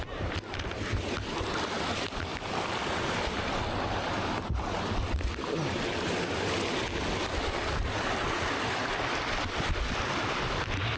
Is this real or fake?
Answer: real